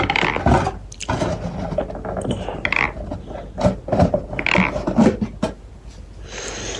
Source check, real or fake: real